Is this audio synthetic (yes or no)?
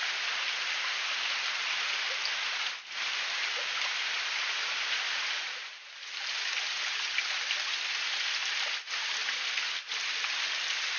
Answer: no